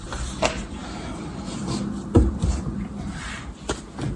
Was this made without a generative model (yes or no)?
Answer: yes